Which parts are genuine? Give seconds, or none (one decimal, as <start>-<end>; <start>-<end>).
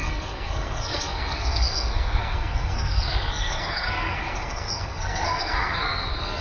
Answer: none